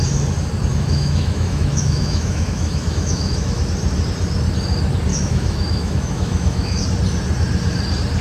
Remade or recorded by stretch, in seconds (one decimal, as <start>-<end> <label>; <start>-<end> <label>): 0.0-0.7 recorded; 0.7-3.6 remade; 3.6-5.1 recorded; 5.1-6.8 remade; 6.8-8.2 recorded